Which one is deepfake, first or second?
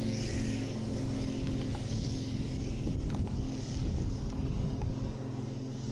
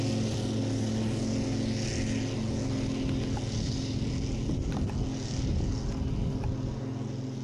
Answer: first